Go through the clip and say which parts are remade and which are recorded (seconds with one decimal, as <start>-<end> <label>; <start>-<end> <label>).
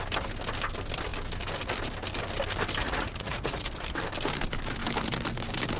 0.0-2.8 recorded; 2.8-3.7 remade; 3.7-5.8 recorded